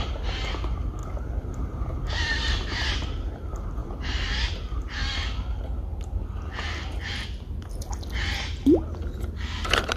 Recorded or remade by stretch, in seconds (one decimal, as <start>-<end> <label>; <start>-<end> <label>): 0.0-3.8 recorded; 3.8-4.6 remade; 4.6-10.0 recorded